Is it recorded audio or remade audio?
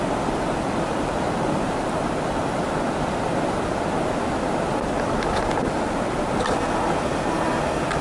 recorded